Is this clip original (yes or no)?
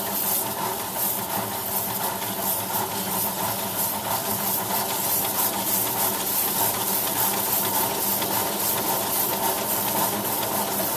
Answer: yes